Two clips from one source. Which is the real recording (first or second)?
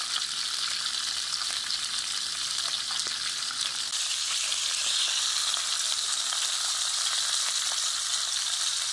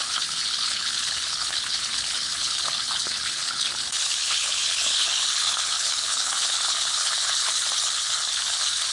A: first